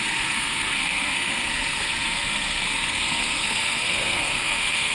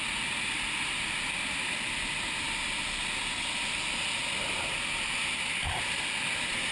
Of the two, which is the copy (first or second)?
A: first